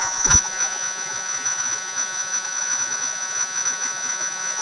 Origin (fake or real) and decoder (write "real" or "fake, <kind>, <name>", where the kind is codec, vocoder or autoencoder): fake, vocoder, Vocos